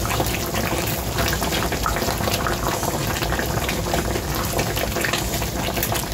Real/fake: real